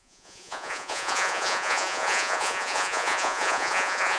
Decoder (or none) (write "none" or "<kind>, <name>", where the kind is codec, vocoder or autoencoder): vocoder, Vocos